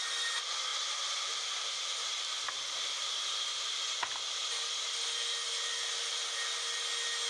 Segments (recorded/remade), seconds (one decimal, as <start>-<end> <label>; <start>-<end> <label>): 0.0-7.3 recorded